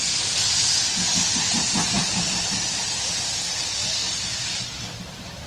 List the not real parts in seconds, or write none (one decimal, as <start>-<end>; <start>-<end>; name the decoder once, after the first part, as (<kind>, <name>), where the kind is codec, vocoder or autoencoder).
2.0-2.9 (vocoder, BigVGAN v2)